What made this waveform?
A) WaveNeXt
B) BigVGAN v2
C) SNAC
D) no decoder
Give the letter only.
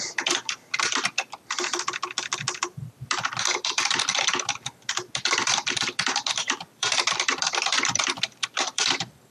B